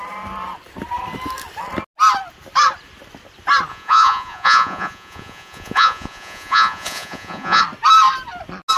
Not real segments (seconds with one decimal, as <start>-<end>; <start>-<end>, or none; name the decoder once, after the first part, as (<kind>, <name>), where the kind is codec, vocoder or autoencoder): 3.7-7.6 (vocoder, Vocos)